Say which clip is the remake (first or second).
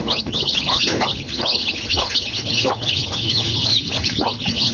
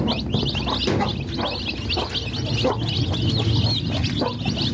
first